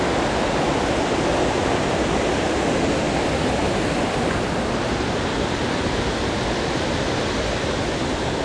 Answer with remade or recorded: recorded